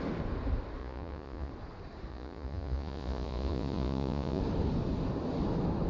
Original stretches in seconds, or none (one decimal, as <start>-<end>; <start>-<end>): 0.0-0.8; 1.5-2.1; 4.4-5.9